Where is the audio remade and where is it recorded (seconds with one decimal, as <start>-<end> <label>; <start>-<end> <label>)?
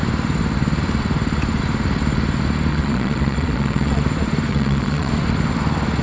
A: 0.0-2.7 recorded; 2.7-4.0 remade; 4.0-4.5 recorded; 4.5-5.1 remade; 5.1-6.0 recorded